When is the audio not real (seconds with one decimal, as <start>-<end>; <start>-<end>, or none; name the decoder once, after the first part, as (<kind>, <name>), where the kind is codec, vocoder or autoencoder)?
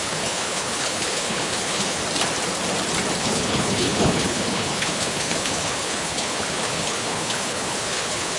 0.0-2.0 (codec, HILCodec); 3.2-8.4